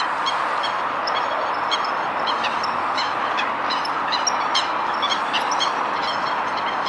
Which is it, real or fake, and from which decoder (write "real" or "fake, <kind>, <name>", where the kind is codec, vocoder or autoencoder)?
real